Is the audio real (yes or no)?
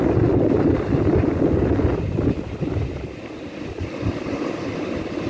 yes